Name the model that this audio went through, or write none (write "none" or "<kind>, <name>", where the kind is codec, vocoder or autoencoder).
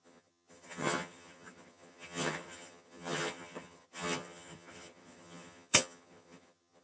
vocoder, HiFi-GAN